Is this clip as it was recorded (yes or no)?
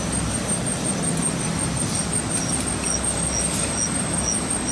yes